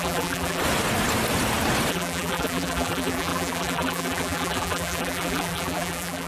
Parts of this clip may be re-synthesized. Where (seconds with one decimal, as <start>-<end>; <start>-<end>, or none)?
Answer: 0.0-0.6; 1.9-6.3